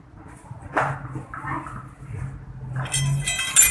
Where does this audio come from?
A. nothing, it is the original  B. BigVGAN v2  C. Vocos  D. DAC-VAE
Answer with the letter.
A